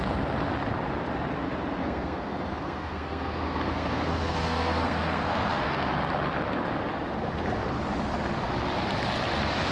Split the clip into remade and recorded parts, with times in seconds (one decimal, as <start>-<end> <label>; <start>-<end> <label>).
0.0-1.8 recorded; 1.8-5.9 remade; 5.9-9.7 recorded